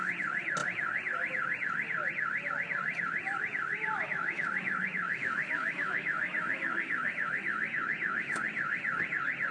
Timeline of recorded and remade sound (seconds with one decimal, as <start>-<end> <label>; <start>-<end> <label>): 0.0-3.7 recorded; 3.7-8.4 remade; 8.4-9.5 recorded